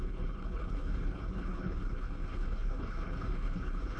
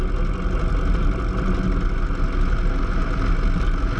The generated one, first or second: first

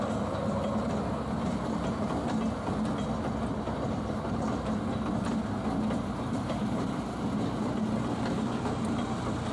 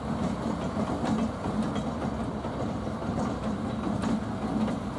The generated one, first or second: second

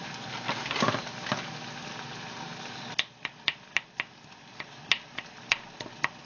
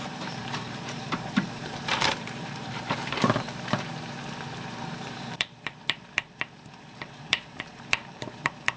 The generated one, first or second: second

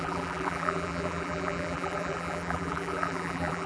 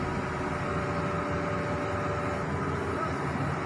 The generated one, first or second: first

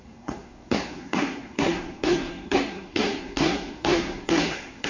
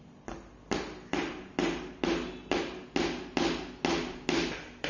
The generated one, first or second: first